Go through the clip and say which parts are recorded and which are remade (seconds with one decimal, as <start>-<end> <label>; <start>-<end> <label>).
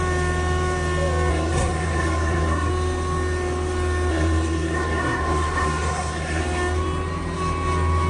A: 0.0-1.3 recorded; 1.3-2.7 remade; 2.7-4.1 recorded; 4.1-6.4 remade; 6.4-8.1 recorded